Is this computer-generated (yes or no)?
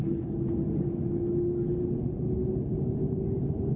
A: no